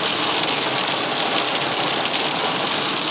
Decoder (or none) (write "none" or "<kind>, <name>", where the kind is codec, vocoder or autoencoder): none